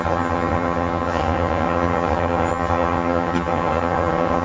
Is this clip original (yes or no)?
no